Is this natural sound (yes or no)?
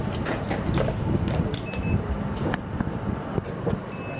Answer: yes